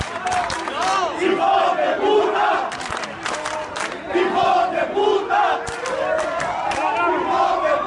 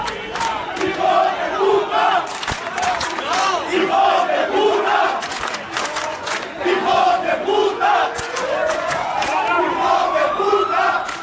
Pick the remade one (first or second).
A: second